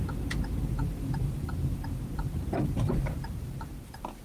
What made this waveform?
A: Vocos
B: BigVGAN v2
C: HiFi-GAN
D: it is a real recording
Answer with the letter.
B